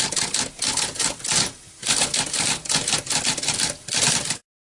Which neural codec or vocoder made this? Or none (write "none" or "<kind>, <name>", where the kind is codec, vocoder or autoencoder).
none